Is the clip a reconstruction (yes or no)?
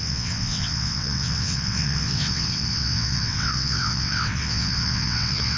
yes